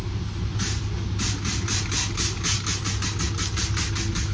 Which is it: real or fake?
real